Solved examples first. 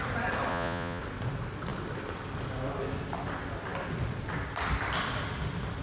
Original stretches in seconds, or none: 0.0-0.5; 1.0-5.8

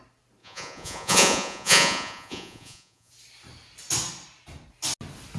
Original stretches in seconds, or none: 0.0-0.4; 3.1-5.4

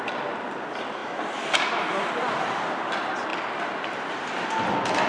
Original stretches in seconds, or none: 0.0-5.1

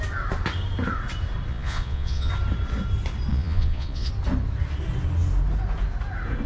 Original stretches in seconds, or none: 0.0-1.5; 2.3-3.3; 4.1-6.5